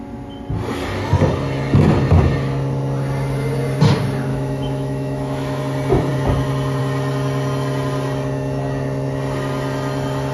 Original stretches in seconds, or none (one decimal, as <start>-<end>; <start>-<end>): 0.0-4.3; 5.6-10.3

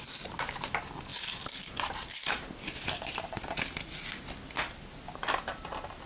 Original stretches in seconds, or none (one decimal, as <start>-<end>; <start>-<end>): 0.0-6.1

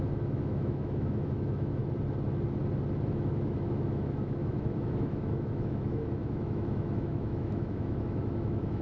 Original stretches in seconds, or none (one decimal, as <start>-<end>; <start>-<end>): 1.8-3.1

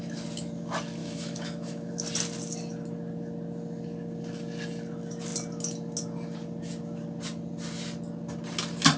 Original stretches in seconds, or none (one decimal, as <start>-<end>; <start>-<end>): 0.0-1.0; 1.9-9.0

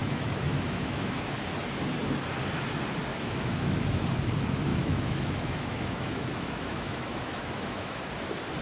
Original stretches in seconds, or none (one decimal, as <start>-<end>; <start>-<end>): 1.3-3.1; 4.0-4.7; 8.1-8.6